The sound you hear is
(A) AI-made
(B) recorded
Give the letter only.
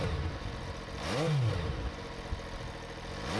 B